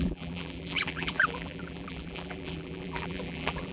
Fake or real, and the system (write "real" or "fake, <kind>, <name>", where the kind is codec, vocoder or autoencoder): fake, vocoder, BigVGAN v2